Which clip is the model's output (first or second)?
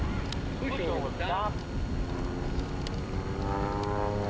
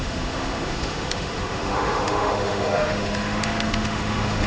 second